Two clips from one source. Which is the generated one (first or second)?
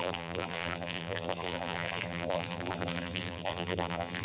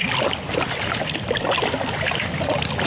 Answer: first